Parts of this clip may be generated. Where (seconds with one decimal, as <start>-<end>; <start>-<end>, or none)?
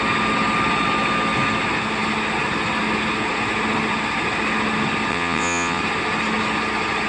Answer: 5.1-5.8